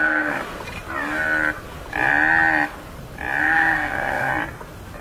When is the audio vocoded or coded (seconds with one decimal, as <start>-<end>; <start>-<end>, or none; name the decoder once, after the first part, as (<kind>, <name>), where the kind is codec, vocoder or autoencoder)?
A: 0.0-0.4 (codec, SNAC); 3.4-4.3